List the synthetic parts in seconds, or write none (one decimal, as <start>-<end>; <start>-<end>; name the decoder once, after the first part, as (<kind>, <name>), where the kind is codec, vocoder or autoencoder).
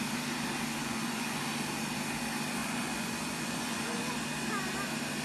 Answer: 0.8-1.4 (vocoder, Vocos); 2.6-4.0